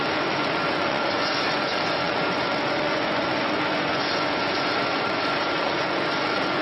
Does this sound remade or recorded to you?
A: remade